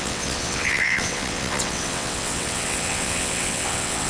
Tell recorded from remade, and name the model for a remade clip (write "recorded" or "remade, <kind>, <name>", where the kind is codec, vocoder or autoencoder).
remade, vocoder, WaveNeXt